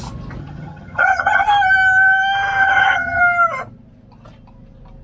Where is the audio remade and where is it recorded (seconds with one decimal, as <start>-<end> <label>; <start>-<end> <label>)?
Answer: 0.0-0.4 recorded; 0.4-1.5 remade; 1.5-2.6 recorded; 2.6-3.2 remade; 3.2-5.0 recorded